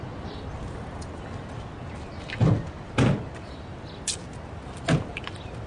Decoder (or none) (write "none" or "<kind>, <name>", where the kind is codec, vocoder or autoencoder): none